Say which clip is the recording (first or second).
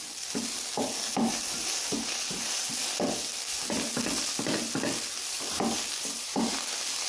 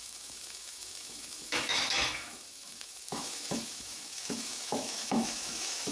first